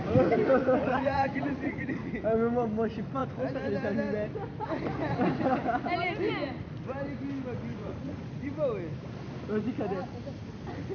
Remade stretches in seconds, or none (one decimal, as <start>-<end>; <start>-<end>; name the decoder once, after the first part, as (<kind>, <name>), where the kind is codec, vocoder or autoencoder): 0.8-1.9 (vocoder, Vocos); 7.7-8.6